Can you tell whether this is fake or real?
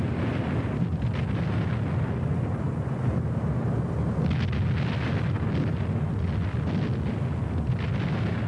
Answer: real